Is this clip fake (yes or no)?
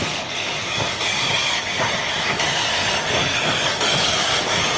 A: yes